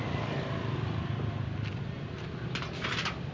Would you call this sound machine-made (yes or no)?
no